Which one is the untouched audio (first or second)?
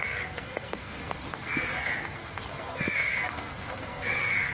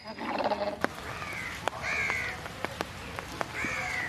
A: second